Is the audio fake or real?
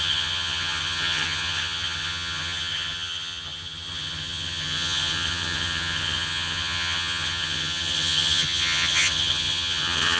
fake